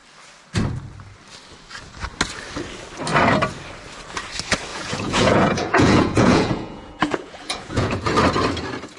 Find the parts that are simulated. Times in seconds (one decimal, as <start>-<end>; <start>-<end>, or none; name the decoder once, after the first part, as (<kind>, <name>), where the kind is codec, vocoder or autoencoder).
4.7-8.0 (vocoder, Vocos)